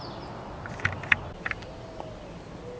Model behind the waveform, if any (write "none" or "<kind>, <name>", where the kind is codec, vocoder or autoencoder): none